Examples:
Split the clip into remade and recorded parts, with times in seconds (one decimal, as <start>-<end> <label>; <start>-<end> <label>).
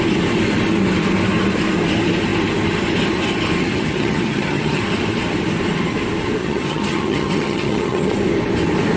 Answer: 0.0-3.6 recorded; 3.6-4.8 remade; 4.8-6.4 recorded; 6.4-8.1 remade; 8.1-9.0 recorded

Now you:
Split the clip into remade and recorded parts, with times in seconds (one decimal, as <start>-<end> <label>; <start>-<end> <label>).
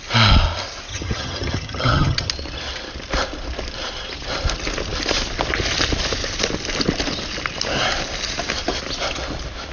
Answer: 0.0-0.9 recorded; 0.9-2.3 remade; 2.3-9.7 recorded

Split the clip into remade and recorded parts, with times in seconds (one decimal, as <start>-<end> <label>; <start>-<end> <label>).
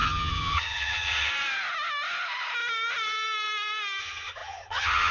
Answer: 0.0-1.3 remade; 1.3-4.0 recorded; 4.0-5.1 remade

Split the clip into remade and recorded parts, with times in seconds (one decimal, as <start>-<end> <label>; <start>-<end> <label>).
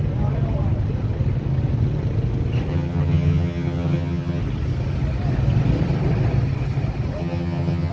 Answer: 0.0-2.7 recorded; 2.7-4.4 remade; 4.4-7.2 recorded; 7.2-7.9 remade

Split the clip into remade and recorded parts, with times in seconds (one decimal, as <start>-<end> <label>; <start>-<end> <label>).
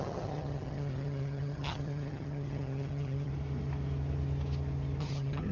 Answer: 0.0-3.3 remade; 3.3-5.0 recorded; 5.0-5.5 remade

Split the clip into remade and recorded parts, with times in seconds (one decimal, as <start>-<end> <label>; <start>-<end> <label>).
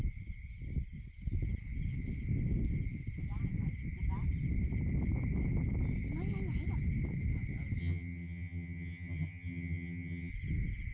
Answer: 0.0-7.8 recorded; 7.8-10.3 remade; 10.3-10.9 recorded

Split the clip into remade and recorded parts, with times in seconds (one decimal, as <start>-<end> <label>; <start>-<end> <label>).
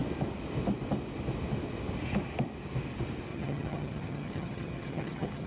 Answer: 0.0-3.3 recorded; 3.3-5.5 remade